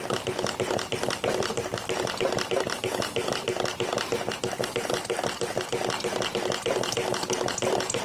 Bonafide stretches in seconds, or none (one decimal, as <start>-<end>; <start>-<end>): 0.0-1.7; 5.7-8.0